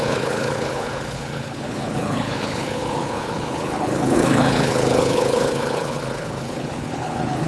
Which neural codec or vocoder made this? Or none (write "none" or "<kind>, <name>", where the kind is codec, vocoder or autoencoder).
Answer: codec, HILCodec